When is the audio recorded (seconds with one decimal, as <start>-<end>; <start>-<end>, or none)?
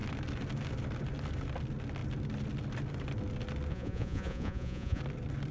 0.0-3.7; 5.0-5.5